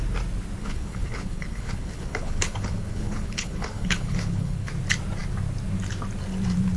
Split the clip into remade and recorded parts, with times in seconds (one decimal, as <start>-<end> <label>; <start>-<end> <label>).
0.0-0.6 recorded; 0.6-4.7 remade; 4.7-6.8 recorded